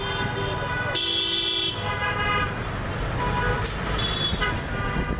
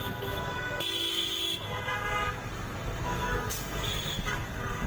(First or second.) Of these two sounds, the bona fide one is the first